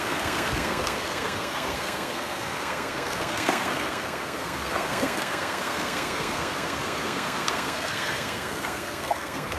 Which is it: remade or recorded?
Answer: remade